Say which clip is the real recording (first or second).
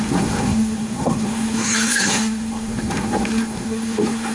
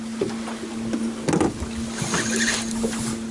second